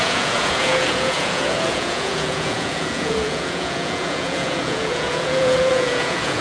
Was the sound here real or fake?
fake